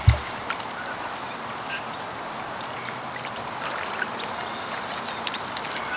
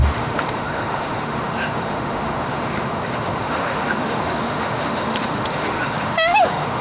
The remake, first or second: second